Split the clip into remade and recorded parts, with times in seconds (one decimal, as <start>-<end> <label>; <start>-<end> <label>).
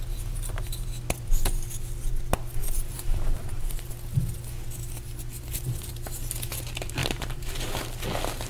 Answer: 0.0-2.6 recorded; 2.6-3.9 remade; 3.9-7.0 recorded; 7.0-8.0 remade; 8.0-8.5 recorded